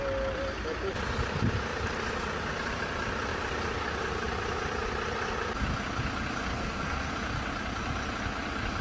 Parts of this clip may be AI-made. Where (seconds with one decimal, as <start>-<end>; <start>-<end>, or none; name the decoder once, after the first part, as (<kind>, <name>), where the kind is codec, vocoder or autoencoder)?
6.5-7.1 (codec, SNAC)